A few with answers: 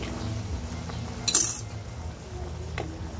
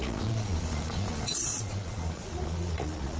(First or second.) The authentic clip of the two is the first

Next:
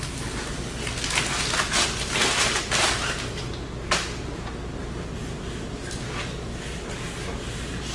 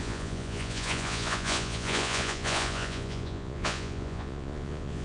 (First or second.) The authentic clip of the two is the first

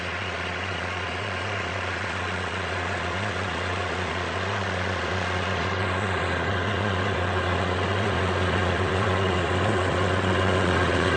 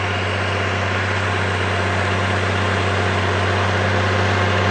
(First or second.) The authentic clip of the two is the second